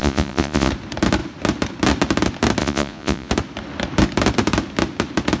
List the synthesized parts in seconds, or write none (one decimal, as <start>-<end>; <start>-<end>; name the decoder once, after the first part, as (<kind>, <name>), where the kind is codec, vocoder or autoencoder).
0.0-0.7 (vocoder, Vocos); 2.6-3.3